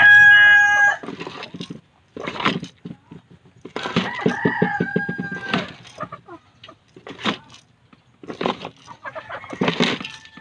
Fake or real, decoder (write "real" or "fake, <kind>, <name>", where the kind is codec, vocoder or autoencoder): real